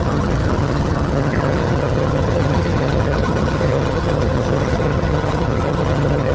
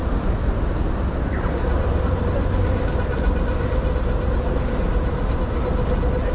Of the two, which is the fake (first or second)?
first